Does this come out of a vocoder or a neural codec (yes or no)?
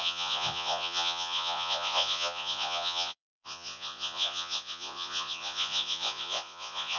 yes